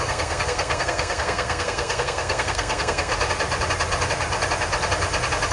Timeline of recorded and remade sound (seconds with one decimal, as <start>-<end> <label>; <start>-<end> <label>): 0.0-3.1 remade; 3.1-5.5 recorded